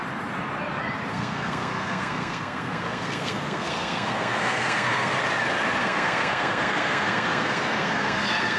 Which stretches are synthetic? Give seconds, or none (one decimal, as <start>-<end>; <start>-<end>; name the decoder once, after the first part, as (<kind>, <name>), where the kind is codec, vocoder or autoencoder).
1.1-5.2 (codec, SNAC); 5.8-8.6